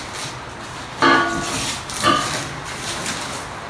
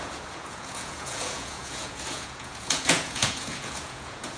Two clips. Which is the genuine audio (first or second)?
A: first